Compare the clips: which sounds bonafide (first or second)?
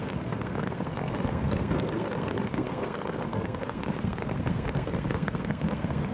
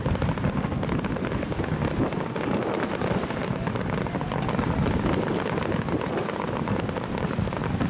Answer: second